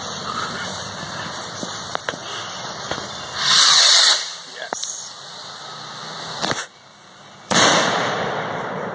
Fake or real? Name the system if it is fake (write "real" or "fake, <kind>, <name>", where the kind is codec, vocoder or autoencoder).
fake, vocoder, BigVGAN v2